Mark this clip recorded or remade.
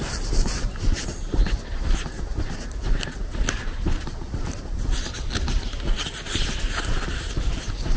recorded